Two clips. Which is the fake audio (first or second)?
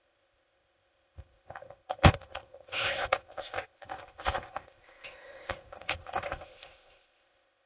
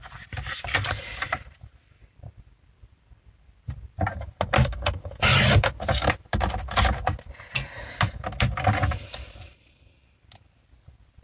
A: first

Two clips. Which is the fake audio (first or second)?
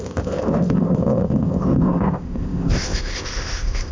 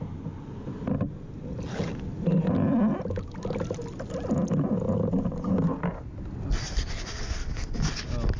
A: first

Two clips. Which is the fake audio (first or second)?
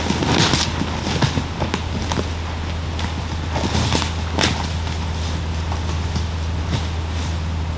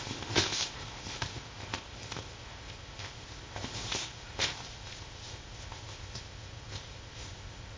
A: second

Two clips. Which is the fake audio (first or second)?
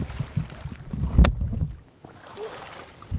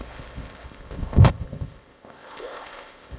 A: second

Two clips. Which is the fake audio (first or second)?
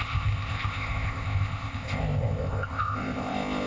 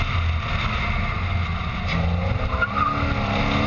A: first